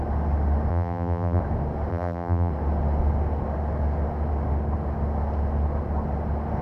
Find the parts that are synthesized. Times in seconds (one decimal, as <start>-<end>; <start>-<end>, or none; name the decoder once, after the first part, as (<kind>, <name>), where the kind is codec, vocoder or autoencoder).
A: 0.7-1.4 (vocoder, BigVGAN v2); 1.9-2.5